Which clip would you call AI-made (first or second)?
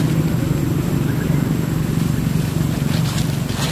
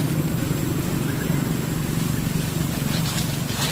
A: second